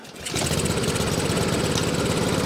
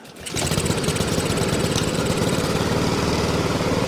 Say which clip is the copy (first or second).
second